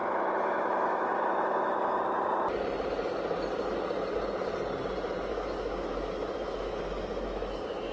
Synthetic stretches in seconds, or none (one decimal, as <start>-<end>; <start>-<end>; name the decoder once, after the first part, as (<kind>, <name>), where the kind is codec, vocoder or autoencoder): 0.0-2.0 (autoencoder, DAC-VAE); 5.3-7.9